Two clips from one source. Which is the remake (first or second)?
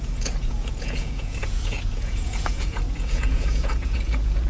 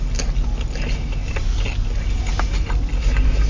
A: first